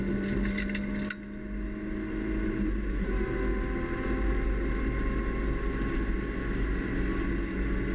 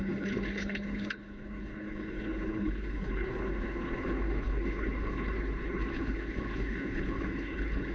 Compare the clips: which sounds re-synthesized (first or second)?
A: second